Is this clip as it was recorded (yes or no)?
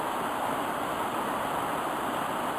yes